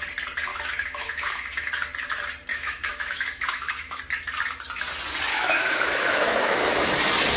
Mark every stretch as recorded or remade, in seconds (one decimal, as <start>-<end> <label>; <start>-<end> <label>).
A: 0.0-0.5 recorded; 0.5-1.7 remade; 1.7-2.5 recorded; 2.5-4.0 remade; 4.0-5.3 recorded; 5.3-6.9 remade; 6.9-7.4 recorded